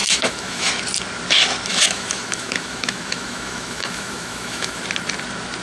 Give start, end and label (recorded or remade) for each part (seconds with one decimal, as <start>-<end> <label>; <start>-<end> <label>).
0.0-0.7 remade; 0.7-1.7 recorded; 1.7-4.8 remade; 4.8-5.6 recorded